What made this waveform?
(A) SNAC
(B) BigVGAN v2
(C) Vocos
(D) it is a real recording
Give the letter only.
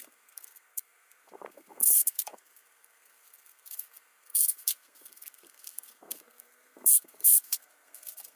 A